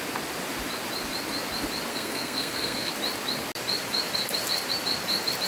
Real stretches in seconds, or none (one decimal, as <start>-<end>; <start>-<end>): 0.0-1.9; 2.9-5.5